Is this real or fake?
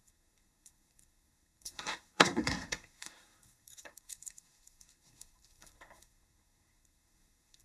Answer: fake